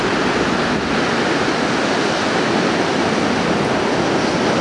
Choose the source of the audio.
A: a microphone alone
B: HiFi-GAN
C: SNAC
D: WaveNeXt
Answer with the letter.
A